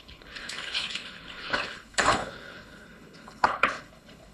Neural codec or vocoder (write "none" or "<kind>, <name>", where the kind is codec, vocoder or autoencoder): codec, HILCodec